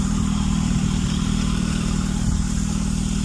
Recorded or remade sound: remade